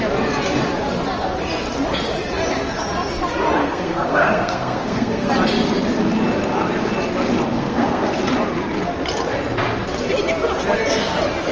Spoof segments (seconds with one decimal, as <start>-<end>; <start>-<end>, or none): 3.6-5.3; 7.5-8.2